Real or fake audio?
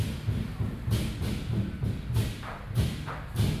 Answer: real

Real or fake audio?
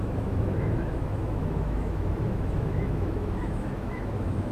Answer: fake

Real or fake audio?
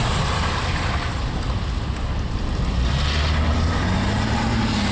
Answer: real